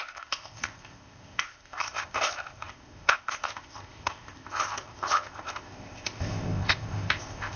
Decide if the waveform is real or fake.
fake